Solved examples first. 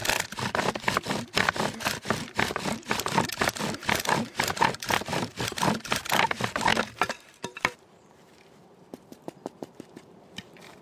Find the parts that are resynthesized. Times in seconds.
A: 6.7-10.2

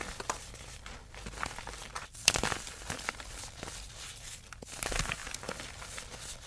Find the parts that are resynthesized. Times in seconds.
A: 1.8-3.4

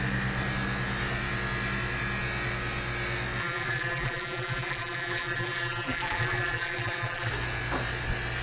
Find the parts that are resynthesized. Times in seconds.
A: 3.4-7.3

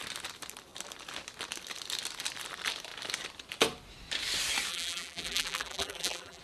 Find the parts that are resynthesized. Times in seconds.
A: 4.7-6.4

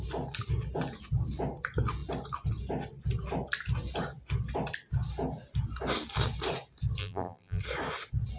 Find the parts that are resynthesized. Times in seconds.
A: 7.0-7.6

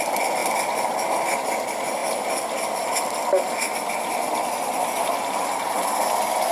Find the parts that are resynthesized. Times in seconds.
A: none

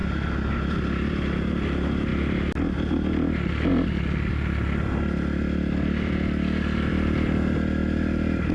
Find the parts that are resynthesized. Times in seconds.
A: 7.8-8.5